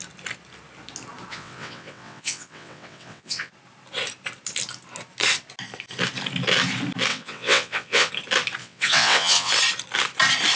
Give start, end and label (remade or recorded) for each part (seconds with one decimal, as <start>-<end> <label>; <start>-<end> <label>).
0.0-1.3 recorded; 1.3-3.5 remade; 3.5-7.1 recorded; 7.1-8.1 remade; 8.1-8.6 recorded; 8.6-9.5 remade; 9.5-10.6 recorded